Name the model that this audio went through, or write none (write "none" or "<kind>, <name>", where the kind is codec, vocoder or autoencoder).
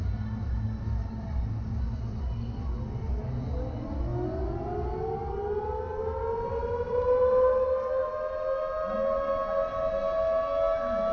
none